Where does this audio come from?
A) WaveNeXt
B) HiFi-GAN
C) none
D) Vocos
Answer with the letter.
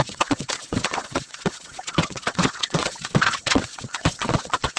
A